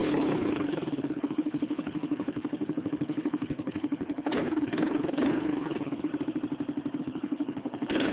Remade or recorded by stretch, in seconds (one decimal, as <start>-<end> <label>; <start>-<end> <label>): 0.0-6.1 remade; 6.1-7.0 recorded; 7.0-8.1 remade